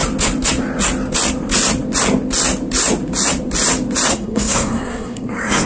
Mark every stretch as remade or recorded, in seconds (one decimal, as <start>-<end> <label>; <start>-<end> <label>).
0.0-4.1 recorded; 4.1-5.7 remade